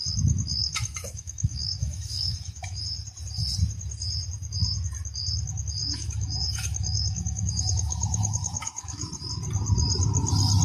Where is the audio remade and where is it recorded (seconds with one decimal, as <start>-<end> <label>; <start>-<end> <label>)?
0.0-0.6 recorded; 0.6-2.8 remade; 2.8-5.8 recorded; 5.8-9.1 remade; 9.1-10.6 recorded